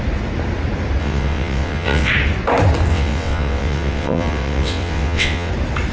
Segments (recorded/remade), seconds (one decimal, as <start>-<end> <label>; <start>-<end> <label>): 0.0-1.0 recorded; 1.0-2.1 remade; 2.1-2.9 recorded; 2.9-5.5 remade; 5.5-5.9 recorded